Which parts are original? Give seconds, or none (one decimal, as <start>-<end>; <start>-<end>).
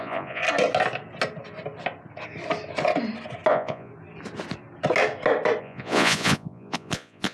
0.4-3.5; 3.9-5.6